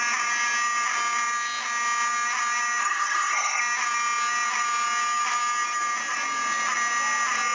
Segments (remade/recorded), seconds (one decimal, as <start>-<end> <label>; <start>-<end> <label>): 0.0-2.8 recorded; 2.8-3.6 remade; 3.6-7.5 recorded